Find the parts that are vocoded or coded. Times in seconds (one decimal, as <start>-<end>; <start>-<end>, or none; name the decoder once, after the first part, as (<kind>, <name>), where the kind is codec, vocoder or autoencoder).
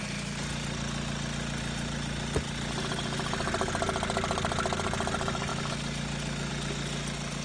none